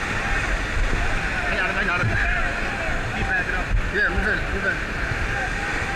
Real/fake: real